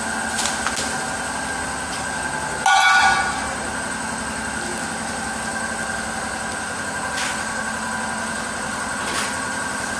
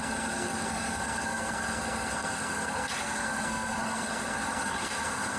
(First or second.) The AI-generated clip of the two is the second